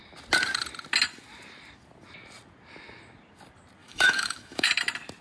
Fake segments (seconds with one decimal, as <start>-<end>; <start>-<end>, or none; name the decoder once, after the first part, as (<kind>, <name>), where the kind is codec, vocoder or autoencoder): 3.8-4.7 (autoencoder, DAC-VAE)